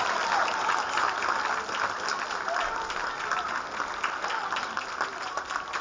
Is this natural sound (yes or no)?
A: yes